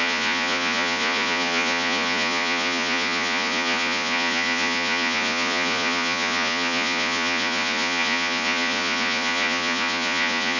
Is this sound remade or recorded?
remade